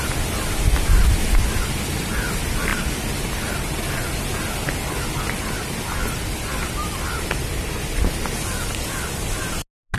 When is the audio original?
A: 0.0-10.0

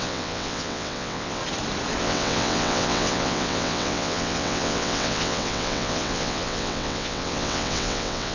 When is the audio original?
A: 1.4-2.0

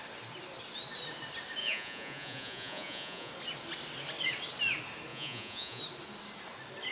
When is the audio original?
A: 0.0-1.6; 3.3-5.1; 5.8-6.9

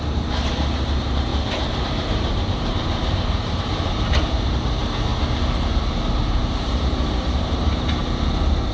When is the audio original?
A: 1.3-1.8; 5.1-6.2; 8.0-8.7

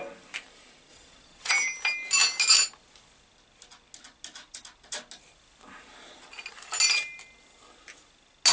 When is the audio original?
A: 0.0-0.9; 1.5-8.5